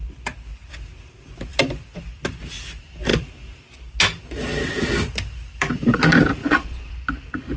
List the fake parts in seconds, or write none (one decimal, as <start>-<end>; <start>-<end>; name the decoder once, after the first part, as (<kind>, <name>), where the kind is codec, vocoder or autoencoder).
6.4-6.9 (vocoder, Vocos)

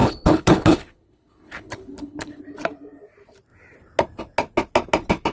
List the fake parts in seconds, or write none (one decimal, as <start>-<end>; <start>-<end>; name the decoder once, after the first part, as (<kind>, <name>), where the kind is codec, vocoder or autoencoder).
0.0-2.4 (codec, HILCodec)

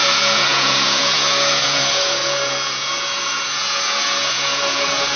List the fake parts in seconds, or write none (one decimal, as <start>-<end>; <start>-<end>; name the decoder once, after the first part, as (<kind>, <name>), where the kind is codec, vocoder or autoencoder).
0.0-5.2 (vocoder, Vocos)